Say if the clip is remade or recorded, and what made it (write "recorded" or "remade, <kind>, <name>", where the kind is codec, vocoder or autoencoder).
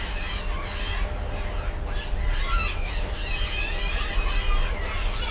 recorded